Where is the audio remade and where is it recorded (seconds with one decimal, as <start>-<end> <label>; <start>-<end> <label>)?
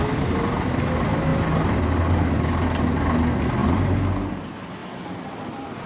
0.0-5.9 recorded